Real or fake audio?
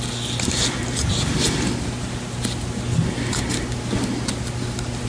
real